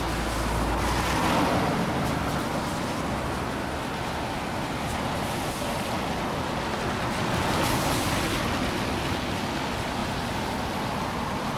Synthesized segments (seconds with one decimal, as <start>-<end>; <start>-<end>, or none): none